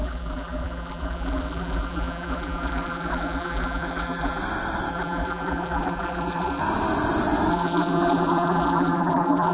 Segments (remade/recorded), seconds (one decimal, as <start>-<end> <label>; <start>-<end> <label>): 0.0-4.4 remade; 4.4-4.9 recorded; 4.9-6.6 remade; 6.6-7.5 recorded; 7.5-9.5 remade